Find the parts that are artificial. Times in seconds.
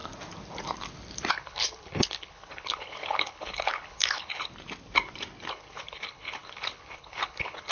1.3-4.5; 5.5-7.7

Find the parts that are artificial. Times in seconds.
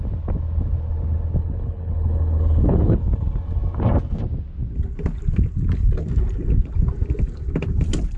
1.4-3.0